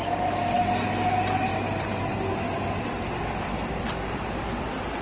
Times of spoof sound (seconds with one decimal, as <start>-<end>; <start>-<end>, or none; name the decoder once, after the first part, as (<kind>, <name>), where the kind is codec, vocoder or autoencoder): none